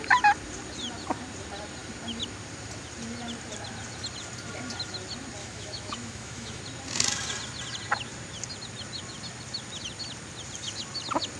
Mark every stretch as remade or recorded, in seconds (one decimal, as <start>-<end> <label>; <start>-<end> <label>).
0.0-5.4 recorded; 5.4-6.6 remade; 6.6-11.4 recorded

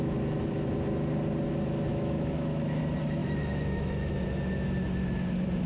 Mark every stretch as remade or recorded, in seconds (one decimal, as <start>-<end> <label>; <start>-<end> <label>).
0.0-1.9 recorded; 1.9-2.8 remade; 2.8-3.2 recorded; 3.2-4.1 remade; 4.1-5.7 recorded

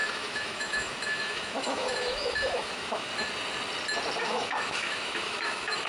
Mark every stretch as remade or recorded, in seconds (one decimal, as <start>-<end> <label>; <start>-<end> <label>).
0.0-3.1 remade; 3.1-4.2 recorded; 4.2-5.9 remade

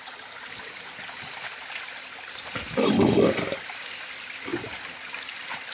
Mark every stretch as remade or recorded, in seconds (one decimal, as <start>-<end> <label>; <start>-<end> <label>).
0.0-5.7 recorded

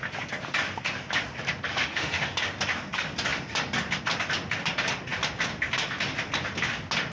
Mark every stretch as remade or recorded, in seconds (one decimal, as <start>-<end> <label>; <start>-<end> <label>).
0.0-1.7 recorded; 1.7-2.5 remade; 2.5-7.1 recorded

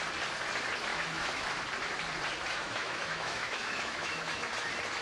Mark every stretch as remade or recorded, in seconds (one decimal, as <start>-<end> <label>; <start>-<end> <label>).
0.0-0.9 recorded; 0.9-1.5 remade; 1.5-2.4 recorded; 2.4-4.5 remade; 4.5-5.0 recorded

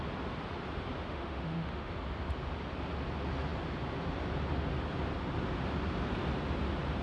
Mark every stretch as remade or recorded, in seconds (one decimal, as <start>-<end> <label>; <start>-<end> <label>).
0.0-1.0 recorded; 1.0-1.9 remade; 1.9-7.0 recorded